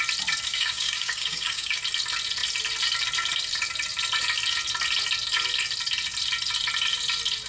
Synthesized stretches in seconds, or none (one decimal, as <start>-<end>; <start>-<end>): 0.5-1.8